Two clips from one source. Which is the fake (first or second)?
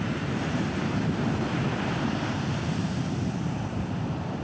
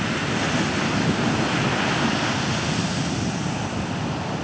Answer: first